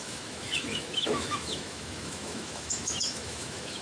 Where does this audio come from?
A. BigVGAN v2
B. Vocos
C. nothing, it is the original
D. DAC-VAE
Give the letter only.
D